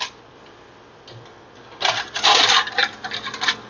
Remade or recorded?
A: recorded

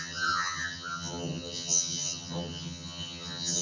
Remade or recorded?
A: remade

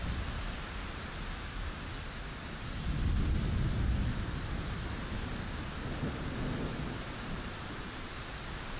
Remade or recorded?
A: recorded